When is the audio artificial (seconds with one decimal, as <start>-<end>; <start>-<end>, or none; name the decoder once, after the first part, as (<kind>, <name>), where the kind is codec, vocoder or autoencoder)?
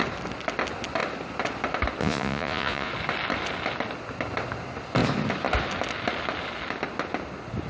2.0-2.9 (vocoder, Vocos)